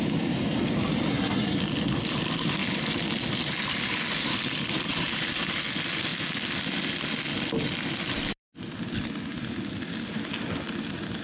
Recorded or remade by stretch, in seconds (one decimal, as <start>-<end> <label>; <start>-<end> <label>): 0.0-1.1 recorded; 1.1-1.6 remade; 1.6-11.2 recorded